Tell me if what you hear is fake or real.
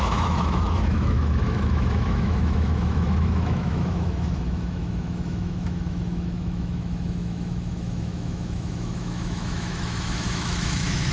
fake